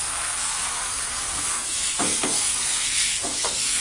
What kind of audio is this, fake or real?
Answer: fake